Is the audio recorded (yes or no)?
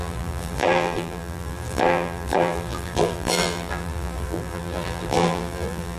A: no